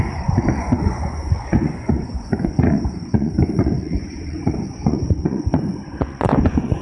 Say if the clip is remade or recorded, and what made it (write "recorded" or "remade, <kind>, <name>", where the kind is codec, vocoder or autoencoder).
remade, vocoder, Vocos